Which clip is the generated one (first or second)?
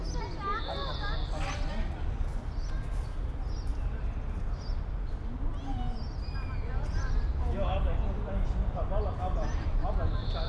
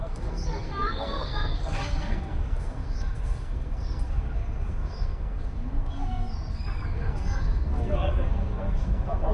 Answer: second